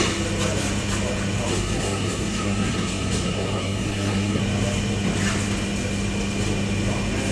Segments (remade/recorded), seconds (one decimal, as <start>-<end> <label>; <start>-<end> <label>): 0.0-1.5 recorded; 1.5-4.4 remade; 4.4-7.3 recorded

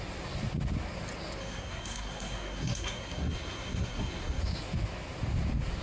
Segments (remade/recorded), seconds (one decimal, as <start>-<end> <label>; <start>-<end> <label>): 0.0-1.4 recorded; 1.4-4.4 remade; 4.4-5.8 recorded

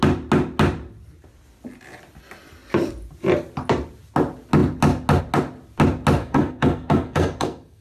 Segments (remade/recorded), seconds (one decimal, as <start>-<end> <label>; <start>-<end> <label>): 0.0-6.2 recorded; 6.2-7.8 remade

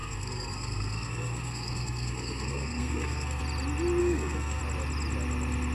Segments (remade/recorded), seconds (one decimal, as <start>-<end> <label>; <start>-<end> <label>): 0.0-3.4 remade; 3.4-4.0 recorded; 4.0-4.6 remade; 4.6-5.7 recorded

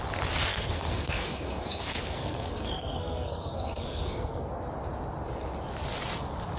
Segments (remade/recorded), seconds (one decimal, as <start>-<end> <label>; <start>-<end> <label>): 0.0-0.5 recorded; 0.5-4.5 remade; 4.5-6.6 recorded

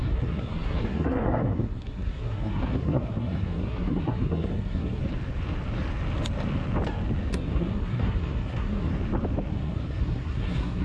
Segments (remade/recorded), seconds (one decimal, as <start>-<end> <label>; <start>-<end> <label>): 0.0-5.0 remade; 5.0-7.3 recorded; 7.3-8.9 remade; 8.9-9.5 recorded; 9.5-10.8 remade